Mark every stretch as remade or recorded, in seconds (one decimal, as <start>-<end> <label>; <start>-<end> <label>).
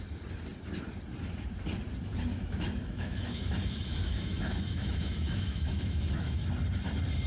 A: 0.0-2.1 recorded; 2.1-6.5 remade; 6.5-7.3 recorded